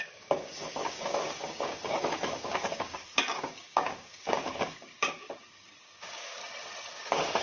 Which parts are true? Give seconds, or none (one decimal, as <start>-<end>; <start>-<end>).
6.4-6.9